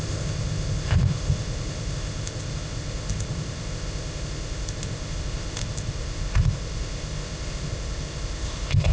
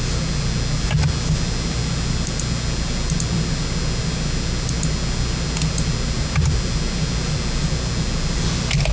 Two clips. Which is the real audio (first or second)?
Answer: second